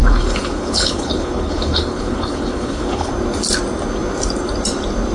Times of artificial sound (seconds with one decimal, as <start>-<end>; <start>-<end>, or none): 0.0-3.1